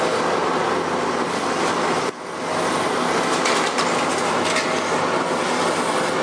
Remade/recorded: recorded